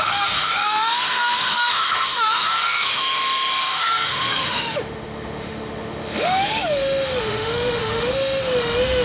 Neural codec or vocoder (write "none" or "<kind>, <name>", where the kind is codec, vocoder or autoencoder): autoencoder, DAC-VAE